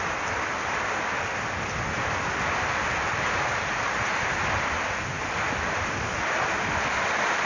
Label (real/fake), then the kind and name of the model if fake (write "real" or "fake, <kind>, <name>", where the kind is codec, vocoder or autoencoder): real